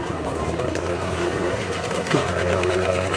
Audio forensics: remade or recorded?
remade